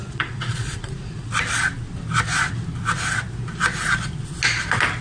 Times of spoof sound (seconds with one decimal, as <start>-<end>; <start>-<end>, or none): 0.0-1.3